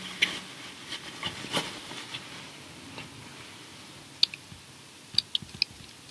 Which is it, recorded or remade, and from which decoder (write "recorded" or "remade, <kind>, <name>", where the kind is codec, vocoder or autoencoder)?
recorded